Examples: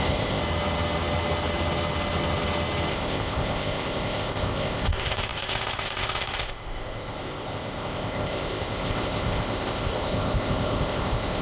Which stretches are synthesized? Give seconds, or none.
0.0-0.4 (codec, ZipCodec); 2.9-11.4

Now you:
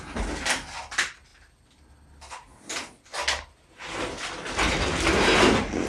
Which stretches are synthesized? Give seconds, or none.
none

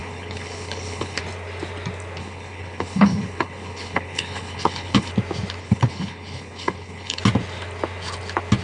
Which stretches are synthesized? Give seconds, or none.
0.0-1.2 (codec, HILCodec); 2.2-5.1; 5.6-7.2

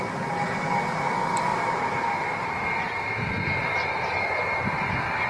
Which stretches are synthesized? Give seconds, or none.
1.5-4.7 (vocoder, BigVGAN v2)

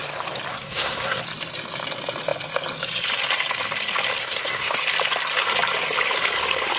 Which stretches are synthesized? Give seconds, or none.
0.5-1.2 (codec, SNAC); 4.2-4.8

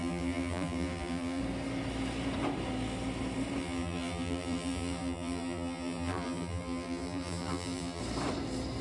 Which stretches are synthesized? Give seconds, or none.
0.0-1.4 (vocoder, BigVGAN v2); 3.6-8.0

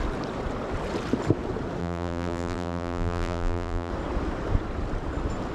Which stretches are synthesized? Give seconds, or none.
1.8-3.9 (vocoder, BigVGAN v2)